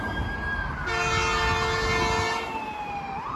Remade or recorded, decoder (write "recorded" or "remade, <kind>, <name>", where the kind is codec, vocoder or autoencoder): recorded